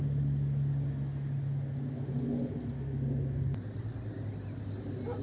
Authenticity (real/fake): real